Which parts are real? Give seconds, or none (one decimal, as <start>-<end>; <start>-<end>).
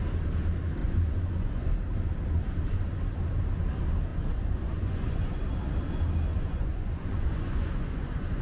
0.0-0.8; 1.7-4.1; 5.4-6.3